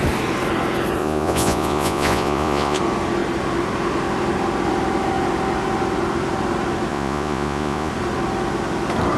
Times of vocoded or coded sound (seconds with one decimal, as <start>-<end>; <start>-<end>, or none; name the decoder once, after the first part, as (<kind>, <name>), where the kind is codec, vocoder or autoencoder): 1.0-2.8 (vocoder, Vocos); 6.9-7.9